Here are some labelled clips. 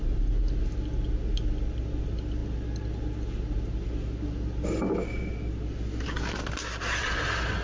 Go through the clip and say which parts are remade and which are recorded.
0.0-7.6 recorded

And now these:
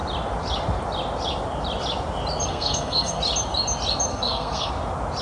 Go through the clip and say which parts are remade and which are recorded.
0.0-2.5 recorded; 2.5-3.2 remade; 3.2-4.1 recorded; 4.1-4.7 remade; 4.7-5.2 recorded

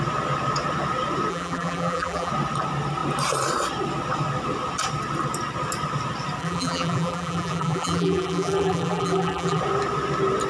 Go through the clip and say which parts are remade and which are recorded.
0.0-1.3 recorded; 1.3-2.3 remade; 2.3-6.4 recorded; 6.4-9.6 remade; 9.6-10.5 recorded

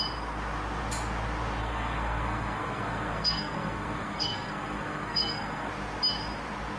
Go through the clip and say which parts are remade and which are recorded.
0.0-1.6 recorded; 1.6-5.7 remade; 5.7-6.8 recorded

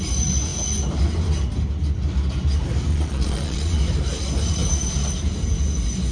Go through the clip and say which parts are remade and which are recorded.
0.0-2.9 recorded; 2.9-3.8 remade; 3.8-6.1 recorded